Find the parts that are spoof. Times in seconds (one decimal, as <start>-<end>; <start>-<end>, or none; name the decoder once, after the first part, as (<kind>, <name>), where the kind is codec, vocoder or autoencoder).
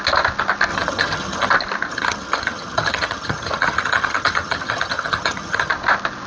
0.7-1.5 (vocoder, HiFi-GAN); 1.9-5.7